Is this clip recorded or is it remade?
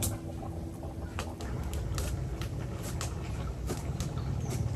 recorded